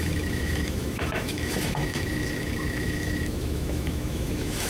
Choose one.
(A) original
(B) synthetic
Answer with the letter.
B